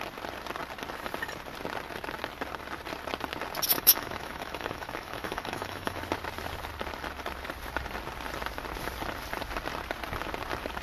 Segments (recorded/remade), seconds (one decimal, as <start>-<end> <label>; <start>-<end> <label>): 0.0-3.7 recorded; 3.7-6.0 remade; 6.0-10.8 recorded